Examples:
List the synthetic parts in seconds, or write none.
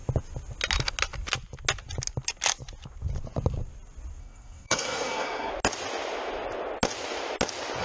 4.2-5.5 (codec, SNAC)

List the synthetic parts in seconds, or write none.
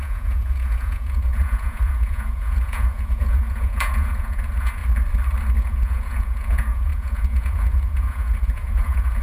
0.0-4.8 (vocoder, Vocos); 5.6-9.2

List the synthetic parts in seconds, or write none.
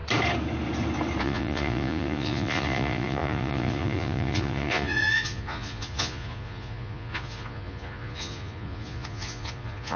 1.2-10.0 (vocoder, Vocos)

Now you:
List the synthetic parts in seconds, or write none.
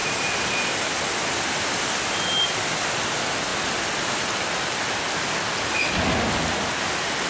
none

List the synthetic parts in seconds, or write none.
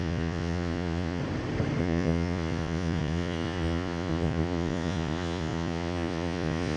0.0-1.2 (vocoder, Vocos); 1.8-6.8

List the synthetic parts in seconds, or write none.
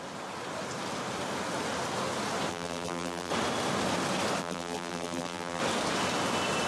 2.5-3.3 (vocoder, BigVGAN v2); 4.4-5.6